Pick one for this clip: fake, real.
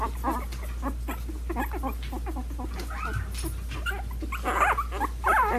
real